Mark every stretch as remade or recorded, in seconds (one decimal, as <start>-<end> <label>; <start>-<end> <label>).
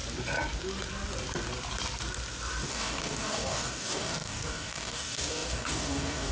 0.0-2.7 recorded; 2.7-6.3 remade